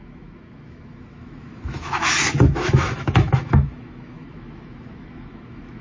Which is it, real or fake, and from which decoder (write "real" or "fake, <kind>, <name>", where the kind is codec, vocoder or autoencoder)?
fake, autoencoder, DAC-VAE